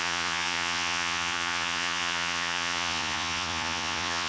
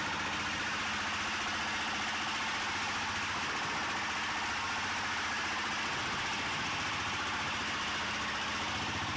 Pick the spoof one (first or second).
first